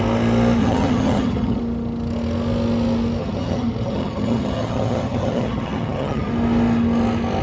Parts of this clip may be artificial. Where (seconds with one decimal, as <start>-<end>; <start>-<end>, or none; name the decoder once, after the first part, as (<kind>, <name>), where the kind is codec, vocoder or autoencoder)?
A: 0.6-1.6 (vocoder, HiFi-GAN); 3.2-6.3